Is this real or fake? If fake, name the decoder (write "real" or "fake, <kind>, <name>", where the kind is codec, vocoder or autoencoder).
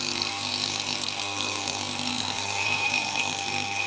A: fake, codec, SNAC